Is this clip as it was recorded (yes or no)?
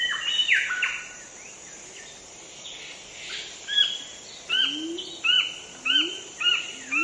yes